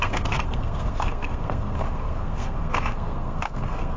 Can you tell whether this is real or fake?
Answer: fake